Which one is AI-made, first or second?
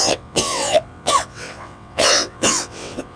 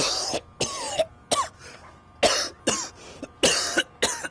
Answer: first